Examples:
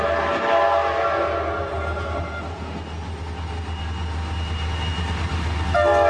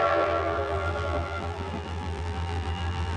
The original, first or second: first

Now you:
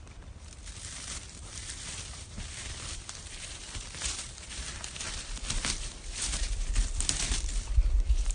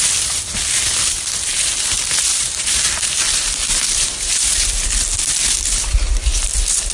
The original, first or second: second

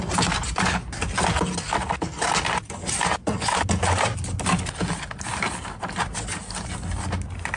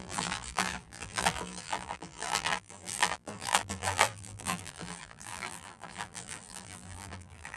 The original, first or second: first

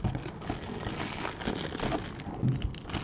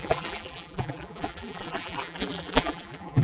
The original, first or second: first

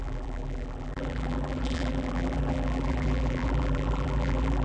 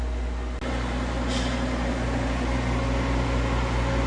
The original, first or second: second